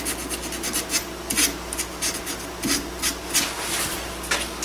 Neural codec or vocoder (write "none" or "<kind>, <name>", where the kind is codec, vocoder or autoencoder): none